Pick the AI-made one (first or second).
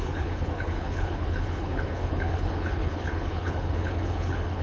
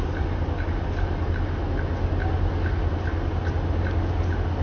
first